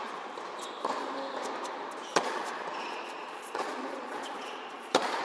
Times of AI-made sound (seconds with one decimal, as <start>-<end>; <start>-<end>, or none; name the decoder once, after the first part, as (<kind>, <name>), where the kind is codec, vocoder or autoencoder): 2.1-5.2 (vocoder, Vocos)